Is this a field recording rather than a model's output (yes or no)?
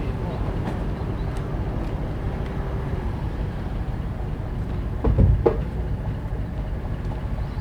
yes